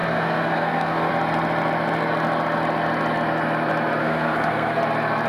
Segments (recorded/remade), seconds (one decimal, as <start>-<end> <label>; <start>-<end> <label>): 0.0-1.1 remade; 1.1-4.0 recorded; 4.0-4.8 remade; 4.8-5.3 recorded